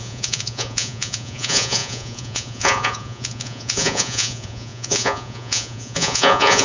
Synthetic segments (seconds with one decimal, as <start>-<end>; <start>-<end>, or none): 0.0-6.6